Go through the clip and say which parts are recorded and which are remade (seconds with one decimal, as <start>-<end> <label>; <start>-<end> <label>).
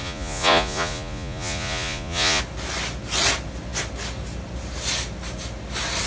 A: 0.0-2.4 remade; 2.4-6.1 recorded